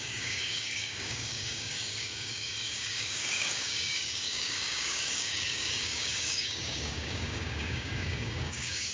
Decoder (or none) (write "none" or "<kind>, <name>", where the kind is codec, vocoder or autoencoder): codec, DAC